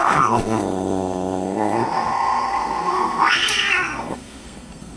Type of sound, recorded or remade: remade